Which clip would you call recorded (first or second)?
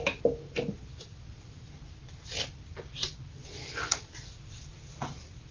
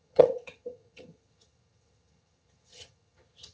first